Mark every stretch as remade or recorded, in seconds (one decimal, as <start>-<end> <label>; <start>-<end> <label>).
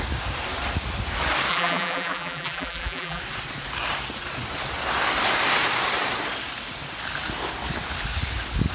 0.0-1.5 recorded; 1.5-3.2 remade; 3.2-8.7 recorded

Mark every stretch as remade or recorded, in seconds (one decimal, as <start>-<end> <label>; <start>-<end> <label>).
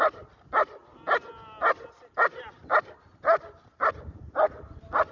0.0-5.1 recorded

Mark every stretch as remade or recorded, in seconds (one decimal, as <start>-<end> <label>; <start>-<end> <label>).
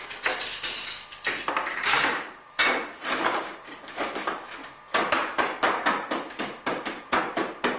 0.0-1.7 recorded; 1.7-7.8 remade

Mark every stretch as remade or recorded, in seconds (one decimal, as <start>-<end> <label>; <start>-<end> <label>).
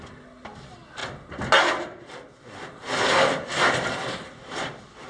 0.0-1.0 remade; 1.0-3.7 recorded; 3.7-5.1 remade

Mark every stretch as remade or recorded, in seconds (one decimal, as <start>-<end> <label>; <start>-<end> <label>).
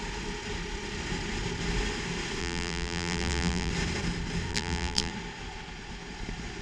0.0-2.4 recorded; 2.4-3.7 remade; 3.7-4.5 recorded; 4.5-5.1 remade; 5.1-6.6 recorded